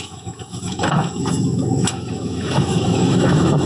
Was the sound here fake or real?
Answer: fake